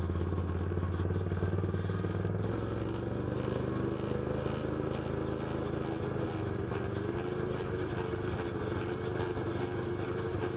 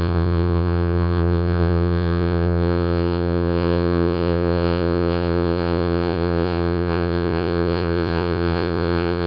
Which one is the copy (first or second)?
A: second